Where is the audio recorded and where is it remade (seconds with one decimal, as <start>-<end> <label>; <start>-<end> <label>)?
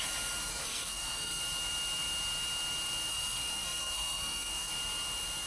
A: 0.0-0.5 recorded; 0.5-1.4 remade; 1.4-3.1 recorded; 3.1-4.7 remade; 4.7-5.5 recorded